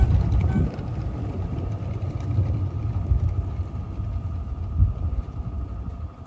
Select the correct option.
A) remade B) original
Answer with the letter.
B